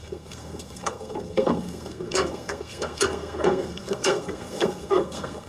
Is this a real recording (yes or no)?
no